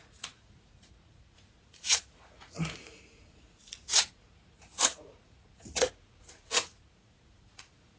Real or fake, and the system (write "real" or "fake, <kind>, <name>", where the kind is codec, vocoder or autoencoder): fake, vocoder, Vocos